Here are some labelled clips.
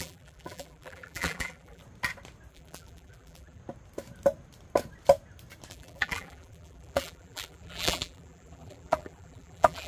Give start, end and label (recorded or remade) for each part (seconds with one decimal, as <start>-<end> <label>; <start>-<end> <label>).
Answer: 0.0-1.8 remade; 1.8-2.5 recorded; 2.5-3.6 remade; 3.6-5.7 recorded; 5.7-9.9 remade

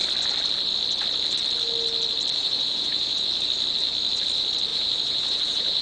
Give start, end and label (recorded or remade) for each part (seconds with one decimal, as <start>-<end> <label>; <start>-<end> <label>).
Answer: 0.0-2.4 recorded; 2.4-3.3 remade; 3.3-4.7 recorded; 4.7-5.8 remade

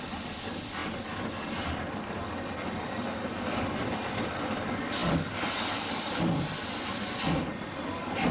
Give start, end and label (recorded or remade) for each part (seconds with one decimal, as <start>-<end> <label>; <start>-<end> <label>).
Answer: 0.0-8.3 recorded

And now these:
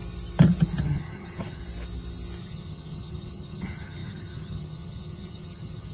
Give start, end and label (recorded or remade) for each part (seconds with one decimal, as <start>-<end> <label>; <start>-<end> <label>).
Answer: 0.0-0.8 recorded; 0.8-1.6 remade; 1.6-2.4 recorded; 2.4-5.9 remade